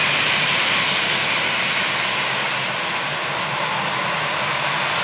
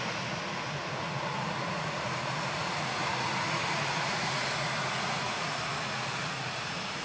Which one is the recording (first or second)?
first